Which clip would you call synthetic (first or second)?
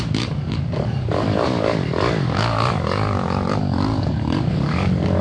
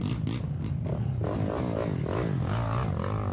first